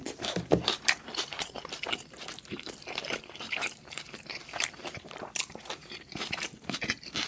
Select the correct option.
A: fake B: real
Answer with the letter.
A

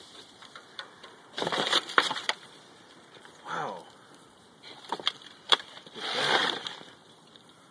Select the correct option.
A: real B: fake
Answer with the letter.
B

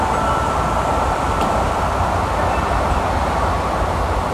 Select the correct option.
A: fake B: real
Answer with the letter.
B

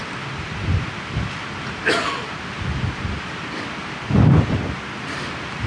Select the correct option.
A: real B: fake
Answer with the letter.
B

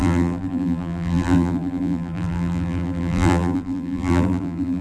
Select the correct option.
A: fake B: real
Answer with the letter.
A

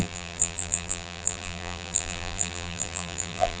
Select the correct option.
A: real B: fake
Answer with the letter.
B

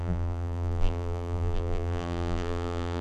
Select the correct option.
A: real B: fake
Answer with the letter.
B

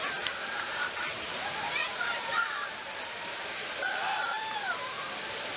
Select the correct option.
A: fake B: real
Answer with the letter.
A